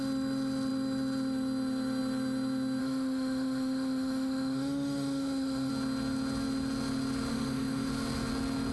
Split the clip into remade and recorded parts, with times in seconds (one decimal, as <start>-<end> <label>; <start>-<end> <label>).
0.0-2.8 recorded; 2.8-5.7 remade; 5.7-7.3 recorded; 7.3-7.9 remade; 7.9-8.7 recorded

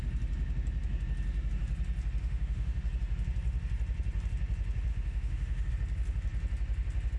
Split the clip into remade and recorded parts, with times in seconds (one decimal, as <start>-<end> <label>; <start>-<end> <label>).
0.0-2.2 recorded; 2.2-2.8 remade; 2.8-4.9 recorded; 4.9-5.7 remade; 5.7-7.2 recorded